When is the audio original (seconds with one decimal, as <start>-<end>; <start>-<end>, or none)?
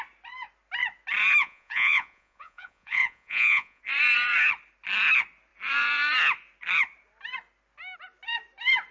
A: 0.0-1.4; 3.8-8.9